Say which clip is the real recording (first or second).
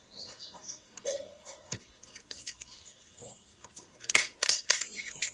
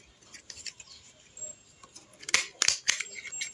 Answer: second